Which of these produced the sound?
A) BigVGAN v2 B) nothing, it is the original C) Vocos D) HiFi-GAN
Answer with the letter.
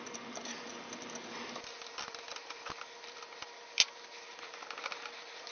B